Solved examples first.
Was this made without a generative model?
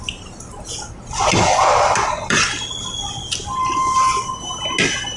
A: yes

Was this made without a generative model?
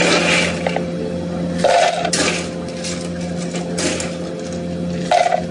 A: yes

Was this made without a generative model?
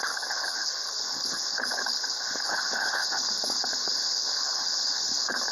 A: no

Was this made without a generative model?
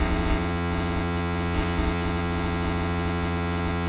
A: no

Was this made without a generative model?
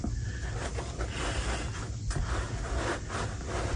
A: yes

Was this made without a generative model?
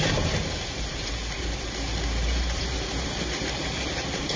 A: no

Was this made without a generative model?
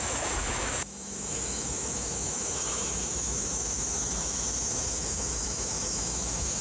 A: no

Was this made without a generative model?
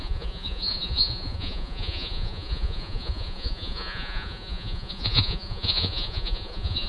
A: no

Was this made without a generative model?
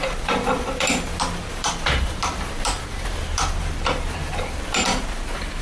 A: no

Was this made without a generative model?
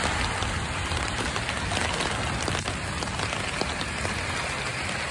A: yes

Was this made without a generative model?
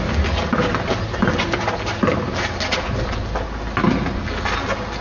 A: yes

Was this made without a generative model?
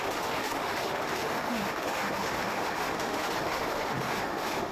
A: no